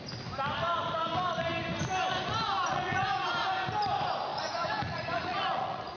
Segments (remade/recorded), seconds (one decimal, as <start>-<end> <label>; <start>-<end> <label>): 0.0-2.7 recorded; 2.7-3.3 remade; 3.3-4.3 recorded; 4.3-6.0 remade